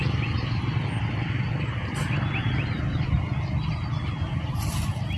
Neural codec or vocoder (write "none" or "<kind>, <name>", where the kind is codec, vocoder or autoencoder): vocoder, BigVGAN v2